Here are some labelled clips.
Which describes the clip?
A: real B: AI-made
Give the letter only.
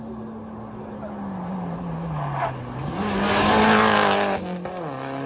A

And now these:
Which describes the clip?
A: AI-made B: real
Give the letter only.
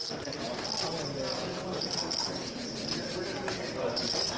B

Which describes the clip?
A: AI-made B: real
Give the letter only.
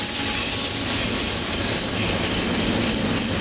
B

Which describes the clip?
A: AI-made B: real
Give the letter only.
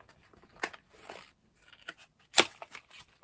B